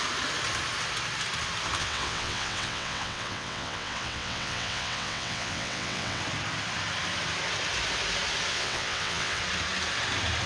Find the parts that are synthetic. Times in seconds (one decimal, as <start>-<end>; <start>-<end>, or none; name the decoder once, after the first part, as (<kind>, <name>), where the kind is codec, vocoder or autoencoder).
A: 1.8-6.2 (vocoder, WaveNeXt); 8.5-9.4

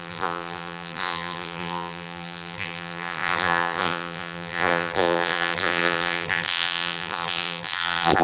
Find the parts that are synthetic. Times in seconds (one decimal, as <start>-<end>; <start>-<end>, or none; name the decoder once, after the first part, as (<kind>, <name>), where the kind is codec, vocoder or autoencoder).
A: 0.0-8.2 (vocoder, BigVGAN v2)

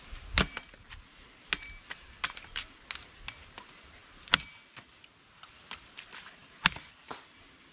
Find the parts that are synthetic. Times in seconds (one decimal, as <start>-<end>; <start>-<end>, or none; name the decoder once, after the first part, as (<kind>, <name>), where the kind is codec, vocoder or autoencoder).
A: none

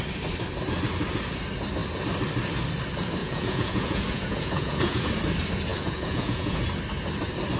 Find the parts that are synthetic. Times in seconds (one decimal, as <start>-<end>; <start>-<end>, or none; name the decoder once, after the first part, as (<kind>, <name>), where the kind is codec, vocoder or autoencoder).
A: 3.2-5.1 (vocoder, Vocos); 5.7-6.6

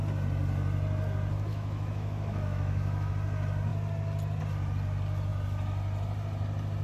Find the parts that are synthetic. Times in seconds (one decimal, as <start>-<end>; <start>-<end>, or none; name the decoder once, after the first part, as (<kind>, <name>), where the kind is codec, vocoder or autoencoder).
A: 1.5-3.1 (autoencoder, DAC-VAE)